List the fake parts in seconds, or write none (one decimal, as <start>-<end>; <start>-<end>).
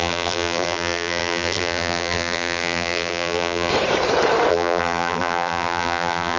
0.0-3.7; 4.5-6.4